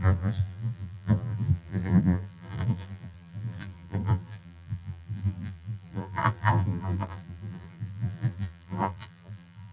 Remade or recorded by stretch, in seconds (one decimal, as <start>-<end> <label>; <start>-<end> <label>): 0.0-9.7 remade